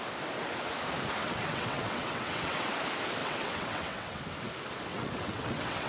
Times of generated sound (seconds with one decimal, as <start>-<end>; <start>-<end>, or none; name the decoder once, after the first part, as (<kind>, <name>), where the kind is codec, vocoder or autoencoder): 1.2-2.8 (vocoder, WaveNeXt); 3.2-4.2; 4.9-5.9